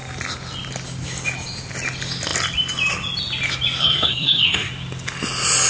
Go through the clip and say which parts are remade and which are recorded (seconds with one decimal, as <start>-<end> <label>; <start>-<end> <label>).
0.0-3.8 recorded; 3.8-4.7 remade; 4.7-5.7 recorded